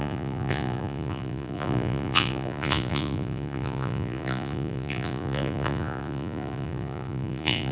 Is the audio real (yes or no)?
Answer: no